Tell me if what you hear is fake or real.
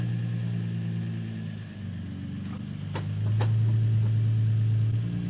real